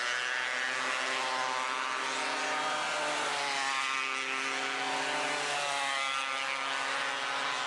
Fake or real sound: real